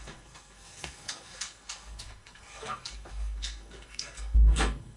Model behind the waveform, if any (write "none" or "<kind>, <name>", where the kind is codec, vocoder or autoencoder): codec, SNAC